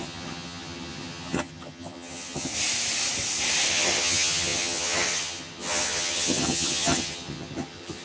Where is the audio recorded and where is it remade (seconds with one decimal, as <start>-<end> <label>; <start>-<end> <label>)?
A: 0.0-2.5 remade; 2.5-3.7 recorded; 3.7-8.0 remade